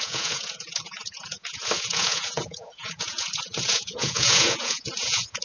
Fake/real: fake